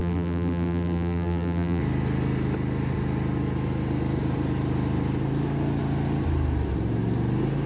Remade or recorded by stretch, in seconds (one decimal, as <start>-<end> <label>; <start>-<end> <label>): 0.0-1.8 remade; 1.8-7.7 recorded